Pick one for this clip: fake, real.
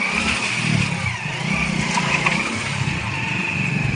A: fake